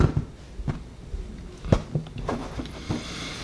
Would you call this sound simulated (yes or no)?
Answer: no